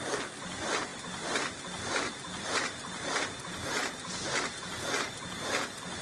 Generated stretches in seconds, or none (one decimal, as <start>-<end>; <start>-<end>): none